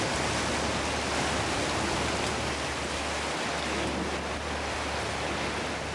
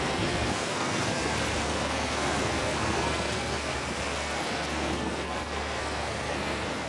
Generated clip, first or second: second